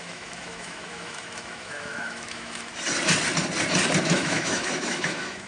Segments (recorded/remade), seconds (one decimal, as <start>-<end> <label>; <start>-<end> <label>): 0.0-2.7 remade; 2.7-4.0 recorded; 4.0-5.5 remade